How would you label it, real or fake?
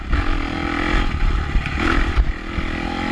real